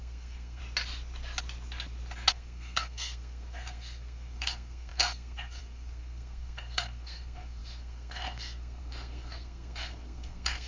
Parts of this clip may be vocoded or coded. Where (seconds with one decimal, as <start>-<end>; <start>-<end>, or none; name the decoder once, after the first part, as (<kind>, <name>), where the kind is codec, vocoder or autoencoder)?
0.0-0.6 (codec, SNAC); 2.3-10.7